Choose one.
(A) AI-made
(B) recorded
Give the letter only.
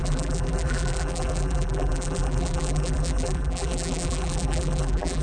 A